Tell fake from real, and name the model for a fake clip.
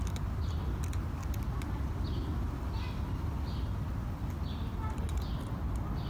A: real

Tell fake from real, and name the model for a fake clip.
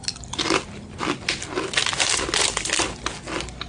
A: real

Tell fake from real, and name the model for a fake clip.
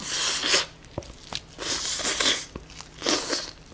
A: real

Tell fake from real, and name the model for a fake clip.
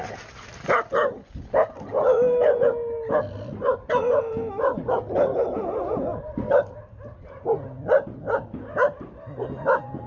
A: real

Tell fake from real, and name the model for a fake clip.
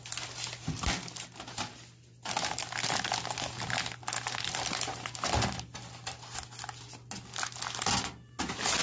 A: real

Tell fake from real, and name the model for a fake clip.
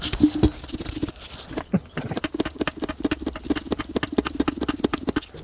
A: real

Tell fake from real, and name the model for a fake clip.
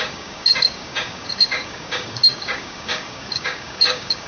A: fake, codec, DAC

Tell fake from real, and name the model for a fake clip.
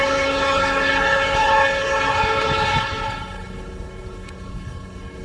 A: fake, codec, HILCodec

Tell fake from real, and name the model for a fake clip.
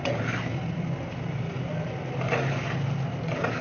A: real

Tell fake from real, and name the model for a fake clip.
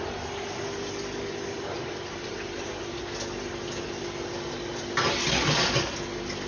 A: real